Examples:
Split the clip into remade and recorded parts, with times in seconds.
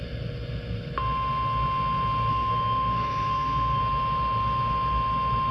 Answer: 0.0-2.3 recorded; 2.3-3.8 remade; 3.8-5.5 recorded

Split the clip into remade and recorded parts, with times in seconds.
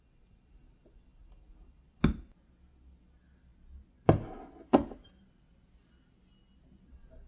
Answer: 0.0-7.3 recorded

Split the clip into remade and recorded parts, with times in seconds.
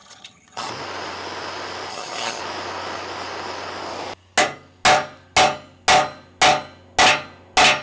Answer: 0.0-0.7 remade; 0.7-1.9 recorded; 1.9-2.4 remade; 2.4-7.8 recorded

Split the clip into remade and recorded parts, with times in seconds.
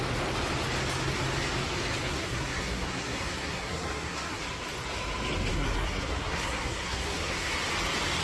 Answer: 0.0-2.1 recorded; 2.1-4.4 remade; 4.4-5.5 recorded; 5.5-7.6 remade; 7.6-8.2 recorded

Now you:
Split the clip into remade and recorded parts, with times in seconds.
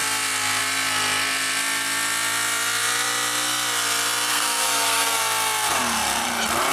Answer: 0.0-4.3 recorded; 4.3-5.2 remade; 5.2-6.7 recorded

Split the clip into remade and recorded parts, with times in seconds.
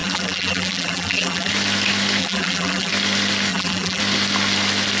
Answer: 0.0-1.5 remade; 1.5-2.2 recorded; 2.2-2.9 remade; 2.9-3.5 recorded; 3.5-4.0 remade; 4.0-5.0 recorded